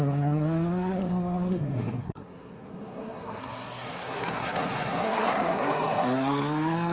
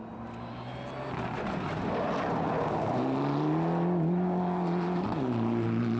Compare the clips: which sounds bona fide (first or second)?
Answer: second